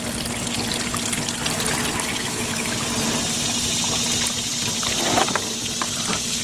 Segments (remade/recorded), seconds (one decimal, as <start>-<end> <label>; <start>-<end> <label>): 0.0-2.1 recorded; 2.1-2.8 remade; 2.8-6.4 recorded

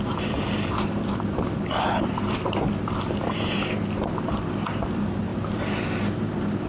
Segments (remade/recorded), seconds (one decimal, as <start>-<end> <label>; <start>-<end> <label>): 0.0-4.0 remade; 4.0-4.8 recorded; 4.8-5.3 remade; 5.3-6.7 recorded

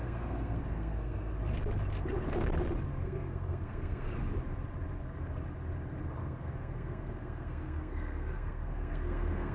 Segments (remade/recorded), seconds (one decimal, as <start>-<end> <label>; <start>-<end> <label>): 0.0-1.4 remade; 1.4-2.9 recorded; 2.9-4.1 remade; 4.1-6.2 recorded; 6.2-9.5 remade

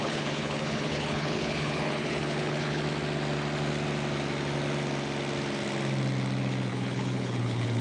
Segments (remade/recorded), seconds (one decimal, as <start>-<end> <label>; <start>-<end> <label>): 0.0-2.8 remade; 2.8-6.7 recorded; 6.7-7.8 remade

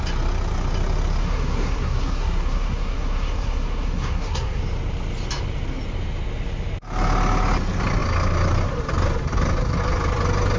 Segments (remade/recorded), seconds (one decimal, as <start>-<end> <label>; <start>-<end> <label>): 0.0-1.2 recorded; 1.2-4.6 remade; 4.6-10.6 recorded

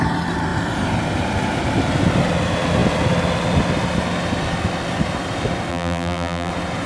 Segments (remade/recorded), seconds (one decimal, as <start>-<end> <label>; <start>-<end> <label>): 0.0-5.7 recorded; 5.7-6.5 remade; 6.5-6.9 recorded

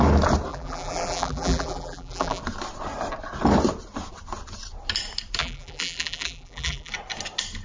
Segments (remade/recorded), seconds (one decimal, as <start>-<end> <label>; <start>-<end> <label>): 0.0-0.5 recorded; 0.5-2.4 remade; 2.4-5.4 recorded; 5.4-6.9 remade; 6.9-7.6 recorded